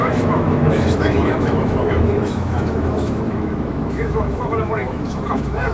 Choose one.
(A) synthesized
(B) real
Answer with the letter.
A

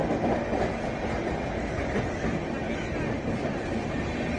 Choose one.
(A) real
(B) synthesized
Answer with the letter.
A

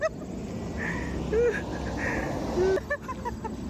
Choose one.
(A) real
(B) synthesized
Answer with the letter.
A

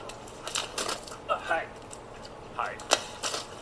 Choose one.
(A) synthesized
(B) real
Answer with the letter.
B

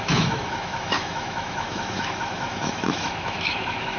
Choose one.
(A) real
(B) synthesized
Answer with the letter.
B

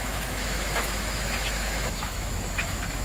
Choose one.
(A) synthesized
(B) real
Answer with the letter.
A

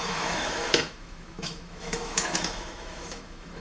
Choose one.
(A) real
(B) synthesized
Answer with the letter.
B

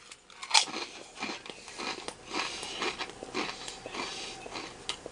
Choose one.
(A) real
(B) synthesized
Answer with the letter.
A